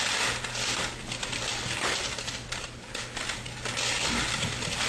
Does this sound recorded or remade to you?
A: recorded